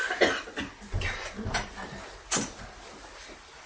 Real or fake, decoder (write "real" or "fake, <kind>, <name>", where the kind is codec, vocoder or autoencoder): real